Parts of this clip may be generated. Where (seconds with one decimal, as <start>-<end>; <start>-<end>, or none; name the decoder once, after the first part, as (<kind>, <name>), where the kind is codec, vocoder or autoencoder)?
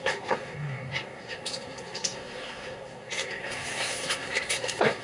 0.0-5.0 (codec, SNAC)